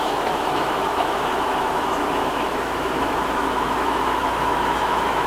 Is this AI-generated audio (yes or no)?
yes